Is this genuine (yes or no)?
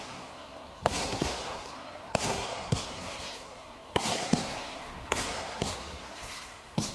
no